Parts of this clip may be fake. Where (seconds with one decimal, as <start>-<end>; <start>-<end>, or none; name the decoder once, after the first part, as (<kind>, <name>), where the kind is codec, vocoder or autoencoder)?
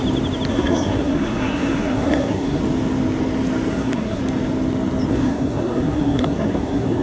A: 0.5-2.6 (codec, SNAC); 3.7-4.2; 5.1-7.0